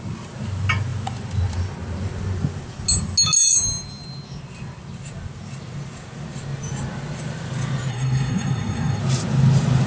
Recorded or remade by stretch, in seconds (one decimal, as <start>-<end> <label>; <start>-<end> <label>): 0.0-7.9 recorded; 7.9-9.0 remade; 9.0-9.9 recorded